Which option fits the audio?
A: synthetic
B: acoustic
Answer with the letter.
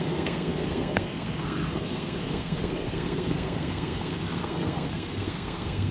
A